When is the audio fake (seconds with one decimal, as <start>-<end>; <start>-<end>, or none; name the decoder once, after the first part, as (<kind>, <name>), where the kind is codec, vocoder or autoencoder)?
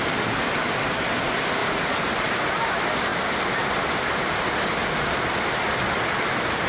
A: 0.0-1.6 (vocoder, BigVGAN v2); 2.5-3.1; 4.1-6.7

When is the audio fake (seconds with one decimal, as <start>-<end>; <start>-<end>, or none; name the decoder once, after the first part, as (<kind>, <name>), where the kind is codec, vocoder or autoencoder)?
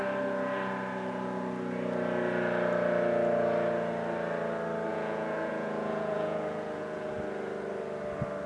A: 4.9-7.1 (vocoder, Vocos)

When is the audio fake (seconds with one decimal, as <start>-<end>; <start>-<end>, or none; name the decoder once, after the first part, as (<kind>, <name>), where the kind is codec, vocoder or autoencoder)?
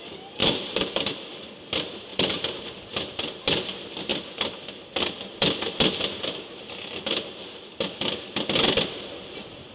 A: 0.4-1.1 (vocoder, BigVGAN v2); 2.1-2.8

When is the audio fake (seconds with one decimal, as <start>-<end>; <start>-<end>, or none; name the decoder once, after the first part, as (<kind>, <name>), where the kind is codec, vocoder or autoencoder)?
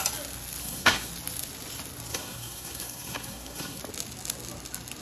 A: 0.6-1.1 (codec, SNAC); 2.1-3.8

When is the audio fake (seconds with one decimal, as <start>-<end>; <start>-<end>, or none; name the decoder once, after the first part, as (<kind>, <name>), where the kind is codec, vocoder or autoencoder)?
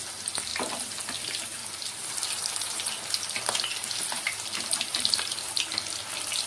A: 1.6-5.5 (vocoder, BigVGAN v2)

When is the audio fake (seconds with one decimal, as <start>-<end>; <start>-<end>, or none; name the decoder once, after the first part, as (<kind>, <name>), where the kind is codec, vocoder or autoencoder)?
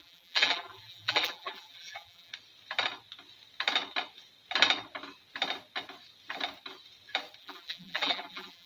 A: 0.0-2.3 (vocoder, BigVGAN v2); 7.4-8.7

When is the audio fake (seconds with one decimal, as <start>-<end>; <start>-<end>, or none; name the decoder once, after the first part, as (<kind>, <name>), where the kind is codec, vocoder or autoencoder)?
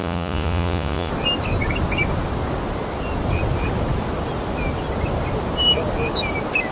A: 0.0-1.1 (vocoder, Vocos)